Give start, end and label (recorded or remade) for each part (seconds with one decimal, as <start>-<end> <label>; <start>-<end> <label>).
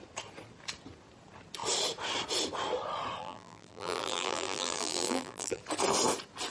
0.0-3.2 recorded; 3.2-5.6 remade; 5.6-6.5 recorded